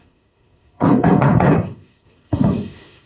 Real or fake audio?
fake